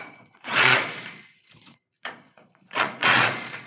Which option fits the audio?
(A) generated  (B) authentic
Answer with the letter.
A